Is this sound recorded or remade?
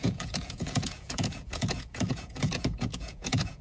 remade